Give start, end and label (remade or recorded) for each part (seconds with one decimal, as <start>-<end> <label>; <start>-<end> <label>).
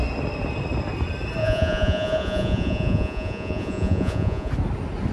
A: 0.0-1.4 recorded; 1.4-4.5 remade; 4.5-5.1 recorded